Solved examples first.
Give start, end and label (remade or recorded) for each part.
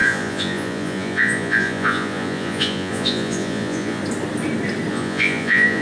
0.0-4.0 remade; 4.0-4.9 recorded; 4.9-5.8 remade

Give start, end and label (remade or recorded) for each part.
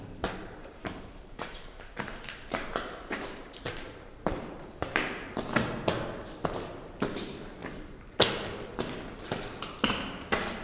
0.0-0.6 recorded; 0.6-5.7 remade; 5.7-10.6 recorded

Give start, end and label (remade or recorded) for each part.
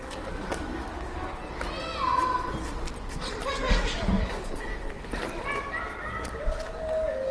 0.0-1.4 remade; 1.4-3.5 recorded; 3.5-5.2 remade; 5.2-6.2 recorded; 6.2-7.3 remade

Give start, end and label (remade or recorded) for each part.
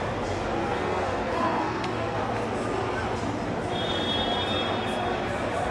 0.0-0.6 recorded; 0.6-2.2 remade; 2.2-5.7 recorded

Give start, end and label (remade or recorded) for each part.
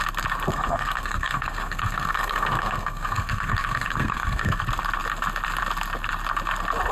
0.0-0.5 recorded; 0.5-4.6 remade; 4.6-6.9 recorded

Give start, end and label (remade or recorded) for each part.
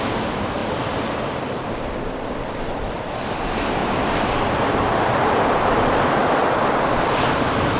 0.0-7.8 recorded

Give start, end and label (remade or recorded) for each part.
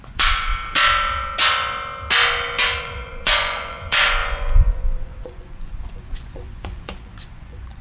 0.0-0.5 remade; 0.5-2.8 recorded; 2.8-7.8 remade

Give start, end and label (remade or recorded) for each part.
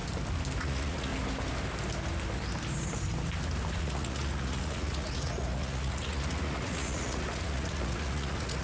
0.0-0.6 recorded; 0.6-1.1 remade; 1.1-3.8 recorded; 3.8-8.6 remade